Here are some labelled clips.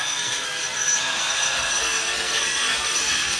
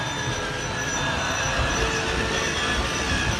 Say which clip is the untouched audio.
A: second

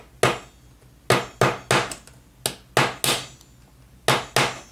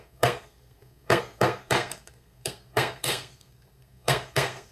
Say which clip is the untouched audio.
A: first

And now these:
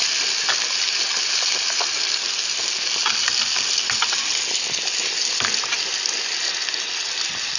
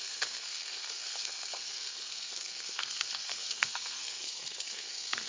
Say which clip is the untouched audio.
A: first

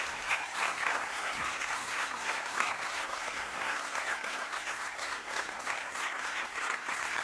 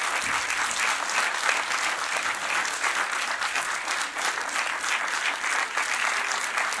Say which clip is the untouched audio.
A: second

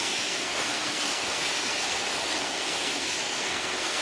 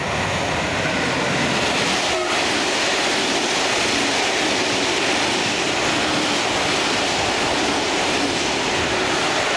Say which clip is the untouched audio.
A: second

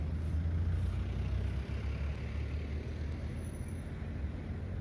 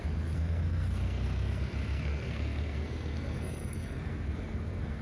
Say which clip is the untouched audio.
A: first